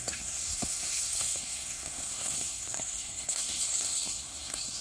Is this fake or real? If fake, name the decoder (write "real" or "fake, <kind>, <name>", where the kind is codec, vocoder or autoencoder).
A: fake, codec, SNAC